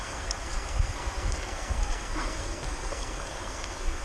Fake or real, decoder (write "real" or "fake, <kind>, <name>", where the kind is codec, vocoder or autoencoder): fake, codec, SNAC